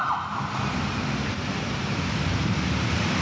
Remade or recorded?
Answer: remade